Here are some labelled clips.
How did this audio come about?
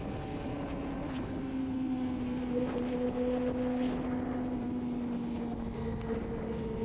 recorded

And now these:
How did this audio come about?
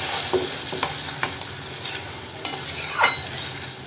recorded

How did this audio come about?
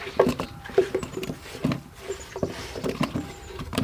remade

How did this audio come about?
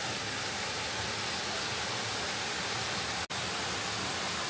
recorded